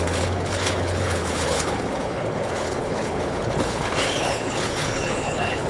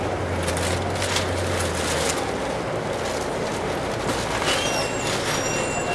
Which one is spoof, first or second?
first